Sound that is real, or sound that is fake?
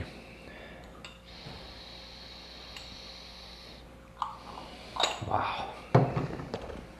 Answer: real